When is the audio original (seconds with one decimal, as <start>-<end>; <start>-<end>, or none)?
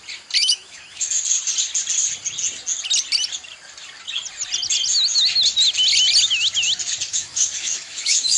0.0-0.4; 1.2-7.1